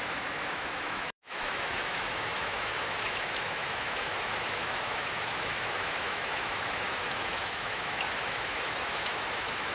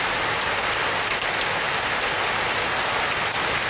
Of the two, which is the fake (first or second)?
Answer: first